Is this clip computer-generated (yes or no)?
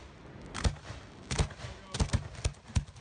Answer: no